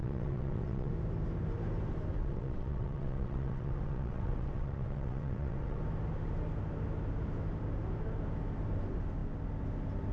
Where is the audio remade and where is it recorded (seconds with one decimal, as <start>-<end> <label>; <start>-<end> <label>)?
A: 0.0-0.9 remade; 0.9-2.2 recorded; 2.2-5.8 remade; 5.8-10.1 recorded